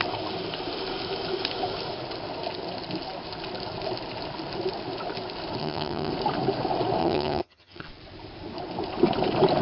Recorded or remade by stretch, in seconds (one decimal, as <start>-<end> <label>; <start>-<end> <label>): 0.0-5.6 recorded; 5.6-6.1 remade; 6.1-7.0 recorded; 7.0-7.9 remade; 7.9-9.6 recorded